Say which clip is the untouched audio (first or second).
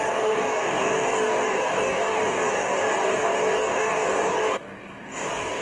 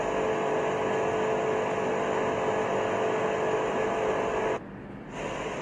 second